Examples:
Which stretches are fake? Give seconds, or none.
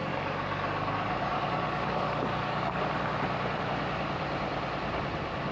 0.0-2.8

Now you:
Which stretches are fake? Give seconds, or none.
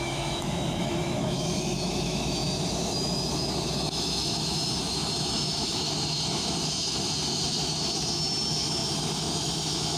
0.0-10.0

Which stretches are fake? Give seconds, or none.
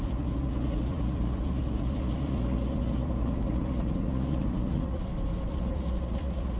0.0-5.0; 5.5-6.6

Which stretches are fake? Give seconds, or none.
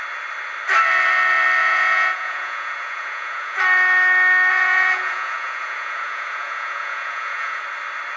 1.6-3.6; 4.5-7.6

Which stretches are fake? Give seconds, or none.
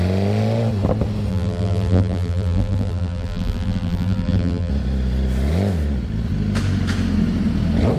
1.3-4.7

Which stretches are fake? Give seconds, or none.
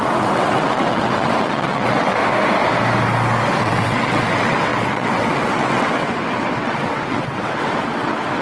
0.0-2.2; 3.6-8.4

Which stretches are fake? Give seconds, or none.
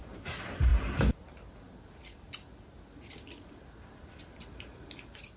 none